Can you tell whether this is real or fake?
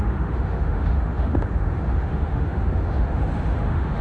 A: fake